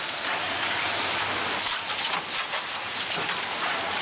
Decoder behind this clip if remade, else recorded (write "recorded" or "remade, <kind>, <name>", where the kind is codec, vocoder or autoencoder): recorded